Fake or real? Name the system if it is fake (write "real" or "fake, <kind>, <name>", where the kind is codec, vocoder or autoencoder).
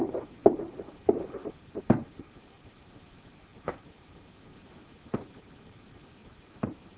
fake, vocoder, BigVGAN v2